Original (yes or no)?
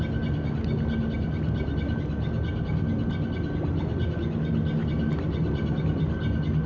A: yes